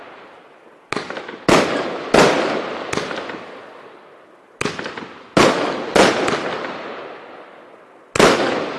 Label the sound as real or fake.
real